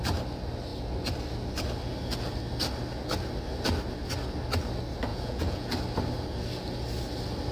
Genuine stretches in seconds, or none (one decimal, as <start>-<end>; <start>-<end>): 0.0-5.1; 5.7-7.5